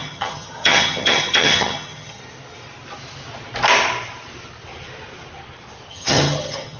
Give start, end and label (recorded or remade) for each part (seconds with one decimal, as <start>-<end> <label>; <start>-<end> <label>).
0.0-2.2 remade; 2.2-5.9 recorded; 5.9-6.8 remade